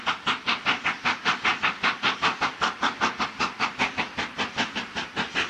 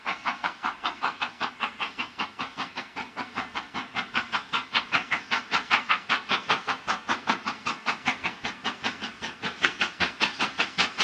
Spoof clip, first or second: second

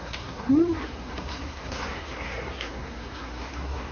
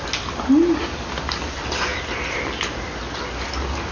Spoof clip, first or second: first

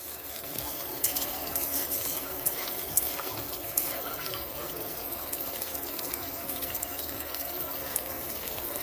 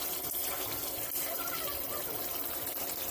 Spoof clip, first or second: first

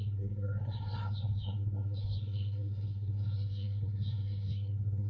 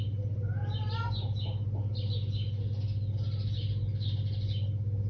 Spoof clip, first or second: first